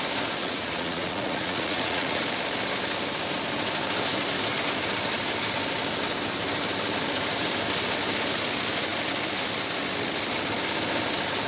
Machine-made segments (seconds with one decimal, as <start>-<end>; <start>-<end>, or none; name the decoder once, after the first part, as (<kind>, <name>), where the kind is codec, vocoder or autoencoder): 0.4-2.2 (vocoder, Vocos)